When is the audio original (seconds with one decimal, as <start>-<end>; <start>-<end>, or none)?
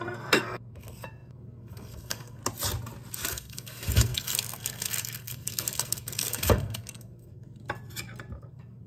2.4-3.3; 7.6-8.4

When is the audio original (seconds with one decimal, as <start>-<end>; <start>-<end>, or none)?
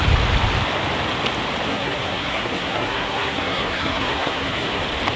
0.0-1.7; 4.8-5.2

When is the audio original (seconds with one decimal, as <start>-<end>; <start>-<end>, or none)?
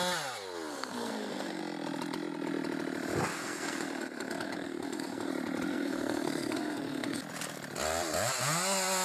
0.0-0.7; 1.6-3.3; 5.3-5.7; 7.2-9.0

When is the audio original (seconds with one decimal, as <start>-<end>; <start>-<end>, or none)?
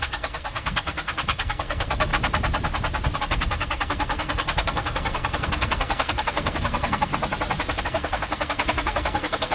2.1-3.2; 7.1-7.8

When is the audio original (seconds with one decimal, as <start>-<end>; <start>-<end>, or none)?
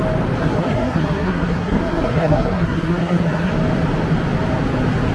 0.0-0.4; 3.5-5.1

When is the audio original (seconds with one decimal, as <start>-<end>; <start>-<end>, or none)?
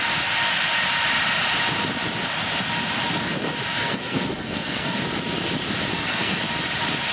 0.0-3.8; 5.0-5.9; 6.4-7.1